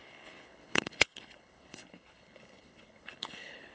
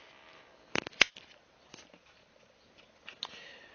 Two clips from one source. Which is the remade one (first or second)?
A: first